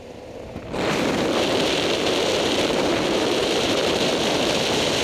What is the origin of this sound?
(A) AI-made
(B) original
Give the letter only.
A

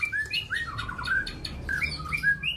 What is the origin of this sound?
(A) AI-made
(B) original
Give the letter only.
A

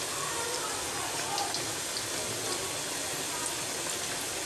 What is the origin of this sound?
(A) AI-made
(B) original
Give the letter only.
B